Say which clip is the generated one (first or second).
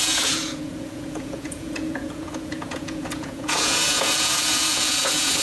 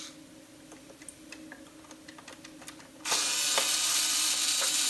first